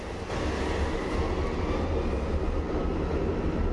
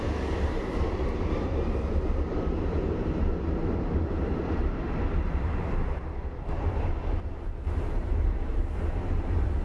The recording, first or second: first